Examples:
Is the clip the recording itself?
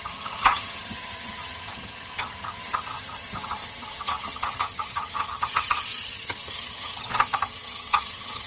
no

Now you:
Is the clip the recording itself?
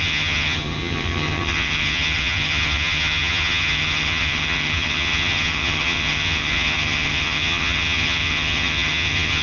no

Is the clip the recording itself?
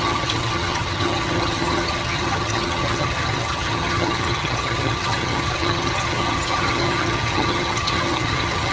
no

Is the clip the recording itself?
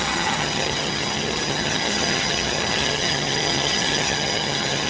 no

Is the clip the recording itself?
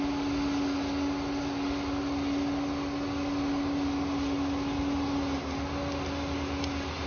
yes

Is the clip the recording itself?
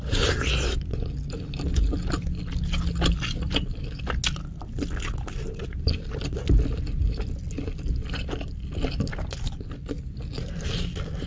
yes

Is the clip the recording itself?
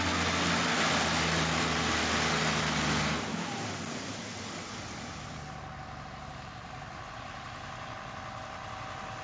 yes